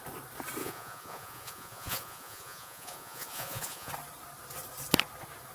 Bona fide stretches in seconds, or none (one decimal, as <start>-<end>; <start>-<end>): 0.0-0.6; 3.9-5.5